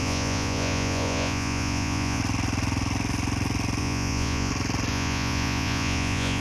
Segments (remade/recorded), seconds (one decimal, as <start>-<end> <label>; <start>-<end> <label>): 0.0-2.2 remade; 2.2-3.8 recorded; 3.8-4.5 remade; 4.5-4.9 recorded; 4.9-6.4 remade